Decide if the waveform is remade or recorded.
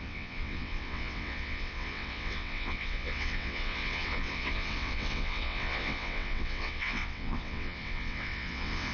remade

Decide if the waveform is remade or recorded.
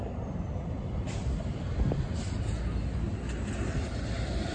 recorded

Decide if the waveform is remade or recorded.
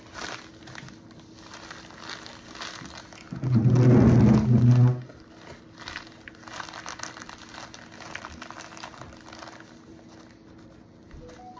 recorded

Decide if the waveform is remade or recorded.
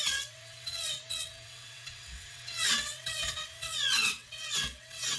remade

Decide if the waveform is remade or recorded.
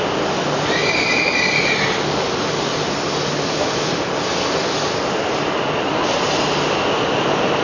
recorded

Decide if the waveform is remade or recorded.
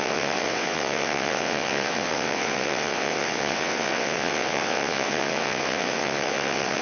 remade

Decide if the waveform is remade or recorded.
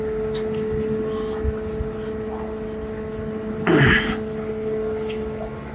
recorded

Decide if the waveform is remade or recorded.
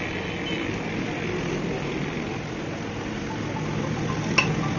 recorded